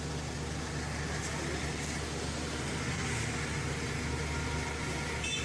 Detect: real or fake real